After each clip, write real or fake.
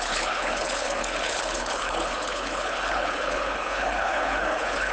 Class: fake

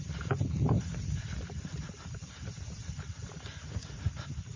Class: real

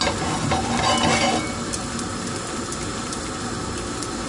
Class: real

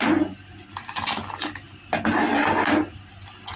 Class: real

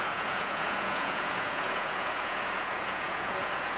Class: fake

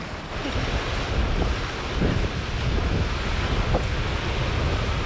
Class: real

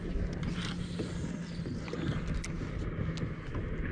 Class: real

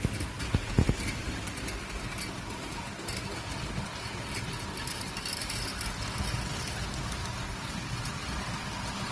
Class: real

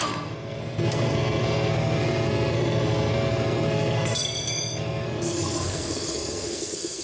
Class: fake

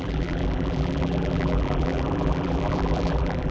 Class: fake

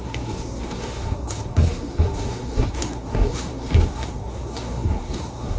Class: fake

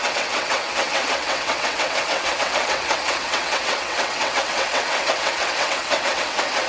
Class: fake